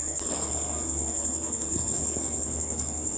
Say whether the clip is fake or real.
fake